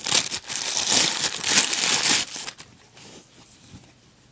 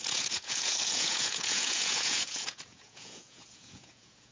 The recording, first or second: first